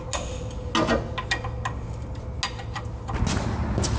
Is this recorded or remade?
recorded